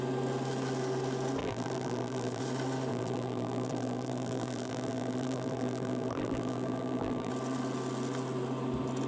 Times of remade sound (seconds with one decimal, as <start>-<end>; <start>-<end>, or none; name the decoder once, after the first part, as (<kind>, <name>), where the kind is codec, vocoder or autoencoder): 1.4-2.4 (vocoder, BigVGAN v2); 2.9-7.3